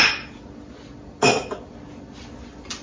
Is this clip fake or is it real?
real